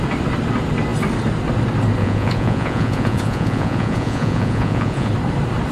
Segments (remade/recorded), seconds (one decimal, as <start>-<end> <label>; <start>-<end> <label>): 0.0-2.0 recorded; 2.0-5.1 remade; 5.1-5.7 recorded